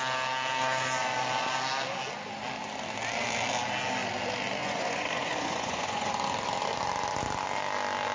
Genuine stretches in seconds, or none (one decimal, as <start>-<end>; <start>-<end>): 0.0-4.6; 6.1-8.1